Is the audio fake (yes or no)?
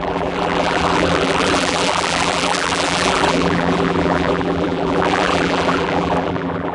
yes